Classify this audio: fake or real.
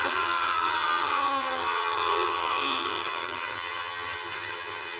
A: fake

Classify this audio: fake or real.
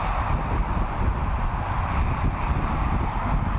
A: real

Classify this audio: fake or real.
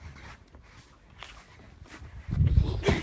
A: real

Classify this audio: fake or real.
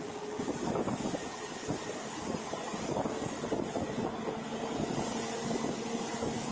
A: real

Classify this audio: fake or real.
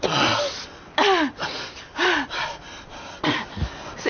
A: real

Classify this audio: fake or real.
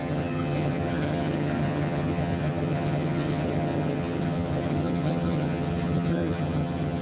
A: fake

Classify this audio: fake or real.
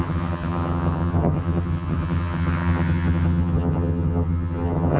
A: fake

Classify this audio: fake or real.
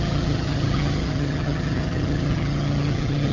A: fake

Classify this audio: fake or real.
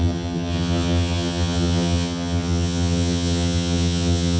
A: fake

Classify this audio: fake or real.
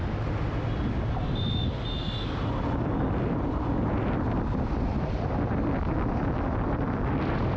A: real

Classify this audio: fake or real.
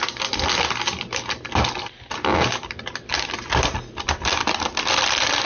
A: real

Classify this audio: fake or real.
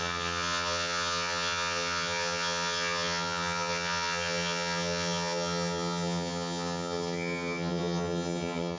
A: fake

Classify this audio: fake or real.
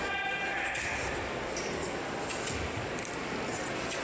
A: real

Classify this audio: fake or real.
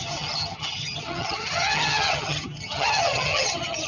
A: fake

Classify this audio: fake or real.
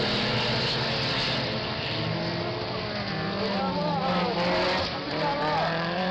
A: real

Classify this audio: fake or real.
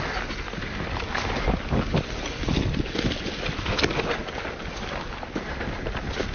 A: real